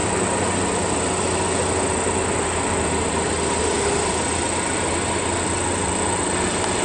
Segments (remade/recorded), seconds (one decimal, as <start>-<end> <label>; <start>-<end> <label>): 0.0-6.8 recorded